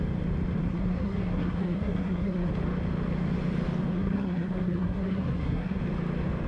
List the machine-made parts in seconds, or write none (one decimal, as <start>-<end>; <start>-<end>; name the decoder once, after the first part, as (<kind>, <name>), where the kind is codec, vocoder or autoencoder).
0.6-2.5 (codec, SNAC); 3.9-5.8